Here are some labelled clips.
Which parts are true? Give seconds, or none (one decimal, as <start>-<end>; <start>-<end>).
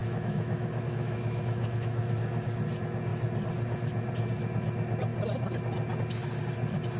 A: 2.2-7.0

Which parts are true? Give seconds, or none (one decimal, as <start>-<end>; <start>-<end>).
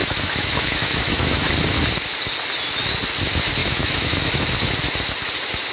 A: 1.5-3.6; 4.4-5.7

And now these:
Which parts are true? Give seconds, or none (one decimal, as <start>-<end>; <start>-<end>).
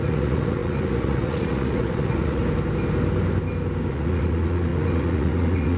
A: 2.4-3.9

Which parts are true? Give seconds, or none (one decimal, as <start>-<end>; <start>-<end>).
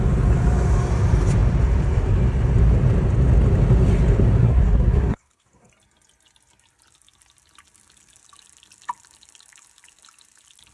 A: 0.0-4.4; 5.7-10.7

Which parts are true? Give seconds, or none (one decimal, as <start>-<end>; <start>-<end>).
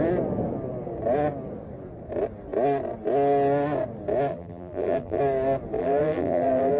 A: 0.0-4.3; 5.2-5.8